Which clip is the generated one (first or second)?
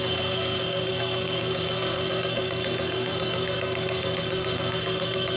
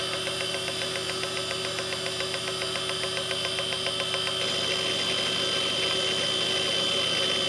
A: first